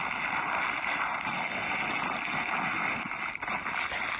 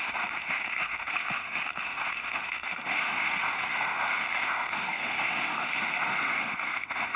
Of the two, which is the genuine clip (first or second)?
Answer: first